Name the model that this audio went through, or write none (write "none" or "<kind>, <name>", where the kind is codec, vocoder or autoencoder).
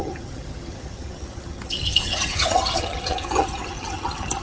vocoder, HiFi-GAN